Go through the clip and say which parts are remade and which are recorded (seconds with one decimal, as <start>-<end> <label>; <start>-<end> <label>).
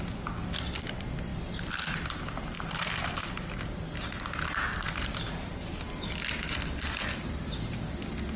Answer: 0.0-8.4 recorded